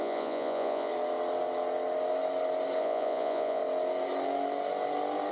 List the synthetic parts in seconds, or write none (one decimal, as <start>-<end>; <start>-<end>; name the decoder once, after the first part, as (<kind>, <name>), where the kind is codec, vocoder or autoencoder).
0.0-0.9 (vocoder, Vocos); 2.8-3.6